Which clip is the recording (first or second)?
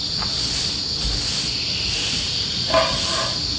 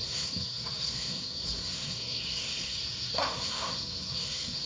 first